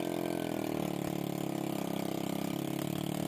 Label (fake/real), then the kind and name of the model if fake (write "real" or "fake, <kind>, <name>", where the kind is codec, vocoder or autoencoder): real